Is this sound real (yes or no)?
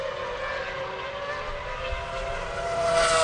yes